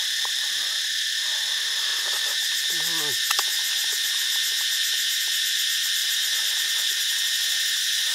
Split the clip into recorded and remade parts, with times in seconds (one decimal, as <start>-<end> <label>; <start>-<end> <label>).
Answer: 0.0-6.0 recorded; 6.0-6.7 remade; 6.7-8.1 recorded